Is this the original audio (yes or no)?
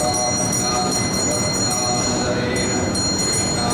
yes